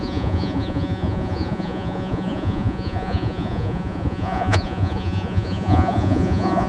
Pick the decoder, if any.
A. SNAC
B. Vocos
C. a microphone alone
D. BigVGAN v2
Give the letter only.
B